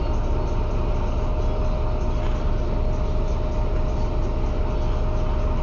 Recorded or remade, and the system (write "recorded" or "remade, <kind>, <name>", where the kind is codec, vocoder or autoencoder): recorded